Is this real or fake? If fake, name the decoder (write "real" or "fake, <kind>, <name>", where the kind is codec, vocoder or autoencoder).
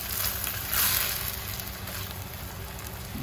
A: real